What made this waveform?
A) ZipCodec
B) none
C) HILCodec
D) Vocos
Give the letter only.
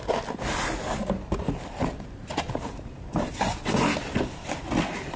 B